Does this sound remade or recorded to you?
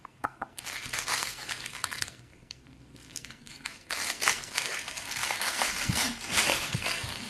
remade